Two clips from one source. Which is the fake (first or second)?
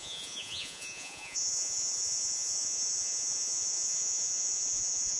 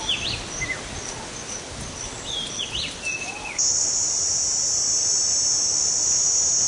first